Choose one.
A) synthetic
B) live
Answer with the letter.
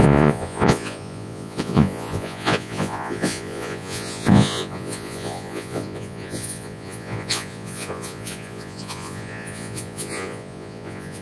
A